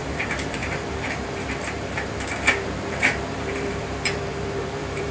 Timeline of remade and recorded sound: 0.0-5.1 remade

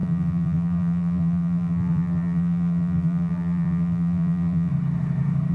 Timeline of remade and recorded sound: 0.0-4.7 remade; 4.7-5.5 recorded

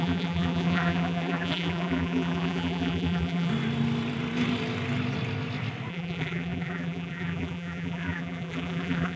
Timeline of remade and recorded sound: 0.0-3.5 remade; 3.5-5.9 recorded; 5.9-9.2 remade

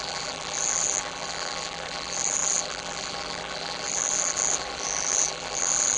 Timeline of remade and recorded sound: 0.0-6.0 remade

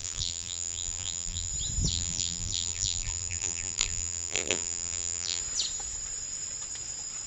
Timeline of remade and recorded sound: 0.0-1.5 remade; 1.5-1.9 recorded; 1.9-5.4 remade; 5.4-7.3 recorded